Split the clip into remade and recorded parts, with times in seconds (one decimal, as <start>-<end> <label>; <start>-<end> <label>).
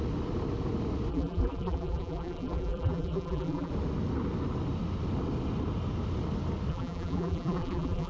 0.0-1.1 recorded; 1.1-3.7 remade; 3.7-6.7 recorded; 6.7-8.1 remade